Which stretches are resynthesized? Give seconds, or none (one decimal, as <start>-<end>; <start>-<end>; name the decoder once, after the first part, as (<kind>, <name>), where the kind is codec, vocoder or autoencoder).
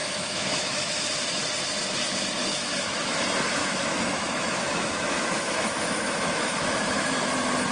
0.0-1.1 (autoencoder, DAC-VAE); 2.5-3.2; 3.6-7.3